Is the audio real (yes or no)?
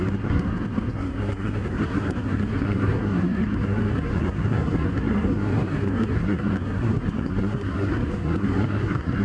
no